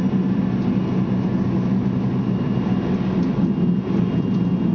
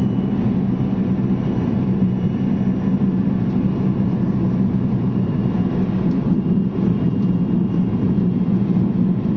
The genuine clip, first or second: first